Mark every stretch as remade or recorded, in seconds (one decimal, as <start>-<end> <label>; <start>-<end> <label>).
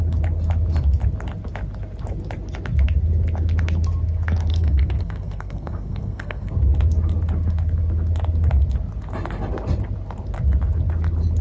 0.0-4.5 recorded; 4.5-6.5 remade; 6.5-11.4 recorded